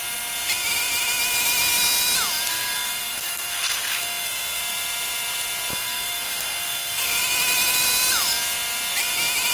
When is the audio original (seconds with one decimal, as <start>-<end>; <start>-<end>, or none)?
0.0-2.5; 4.6-5.7; 7.2-9.5